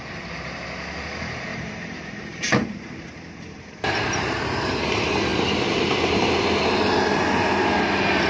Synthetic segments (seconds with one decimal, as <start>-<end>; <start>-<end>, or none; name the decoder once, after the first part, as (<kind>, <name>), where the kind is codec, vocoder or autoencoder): 1.5-3.9 (vocoder, BigVGAN v2)

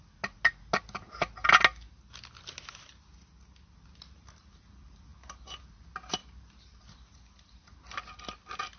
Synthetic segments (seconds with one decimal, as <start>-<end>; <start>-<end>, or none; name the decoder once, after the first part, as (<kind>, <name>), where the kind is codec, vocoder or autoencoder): 6.2-6.8 (vocoder, BigVGAN v2)